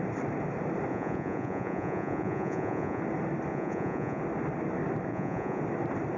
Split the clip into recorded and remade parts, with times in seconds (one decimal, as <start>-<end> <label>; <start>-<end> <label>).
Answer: 0.0-0.9 recorded; 0.9-3.0 remade; 3.0-3.5 recorded; 3.5-4.2 remade; 4.2-5.1 recorded; 5.1-5.6 remade; 5.6-6.2 recorded